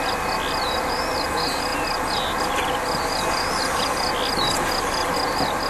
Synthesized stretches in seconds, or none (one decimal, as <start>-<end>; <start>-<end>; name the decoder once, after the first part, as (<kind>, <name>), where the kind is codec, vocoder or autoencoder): none